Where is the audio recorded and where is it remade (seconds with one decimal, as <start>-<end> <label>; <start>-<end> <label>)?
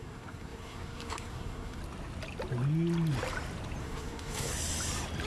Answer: 0.0-1.8 remade; 1.8-3.8 recorded; 3.8-4.5 remade; 4.5-5.3 recorded